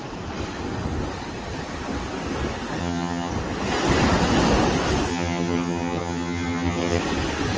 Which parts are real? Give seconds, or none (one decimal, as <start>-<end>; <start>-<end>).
0.0-2.8; 3.3-5.1; 7.0-7.6